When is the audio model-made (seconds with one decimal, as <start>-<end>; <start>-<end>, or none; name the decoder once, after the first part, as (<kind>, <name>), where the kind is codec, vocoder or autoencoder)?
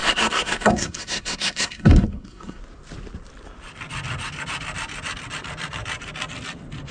0.0-2.6 (codec, SNAC)